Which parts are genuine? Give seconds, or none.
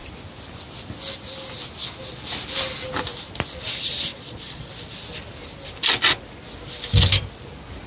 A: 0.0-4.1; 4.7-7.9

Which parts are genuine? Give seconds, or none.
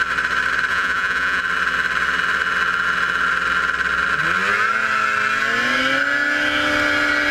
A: 0.0-0.7; 1.4-7.3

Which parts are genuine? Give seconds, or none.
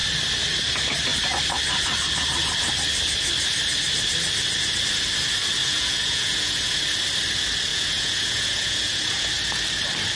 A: 0.0-5.6; 6.8-7.7; 9.3-10.2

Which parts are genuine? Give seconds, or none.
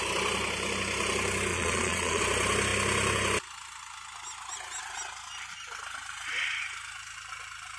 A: 0.0-1.5; 2.2-7.8